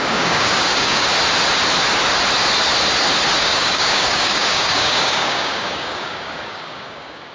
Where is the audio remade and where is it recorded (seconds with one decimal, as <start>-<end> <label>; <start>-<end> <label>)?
0.0-1.1 remade; 1.1-3.4 recorded; 3.4-7.3 remade